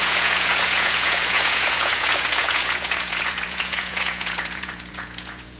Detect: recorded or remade remade